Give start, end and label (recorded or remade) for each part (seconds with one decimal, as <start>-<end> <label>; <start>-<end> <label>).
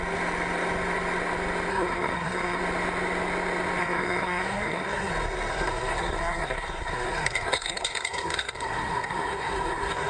0.0-1.7 recorded; 1.7-2.6 remade; 2.6-3.8 recorded; 3.8-5.1 remade; 5.1-5.5 recorded; 5.5-10.1 remade